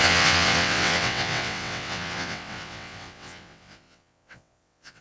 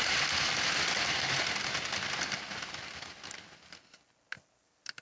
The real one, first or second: second